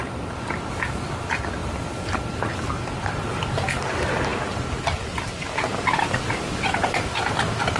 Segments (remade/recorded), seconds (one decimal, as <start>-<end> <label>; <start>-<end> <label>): 0.0-7.8 recorded